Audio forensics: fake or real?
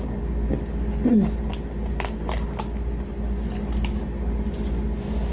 real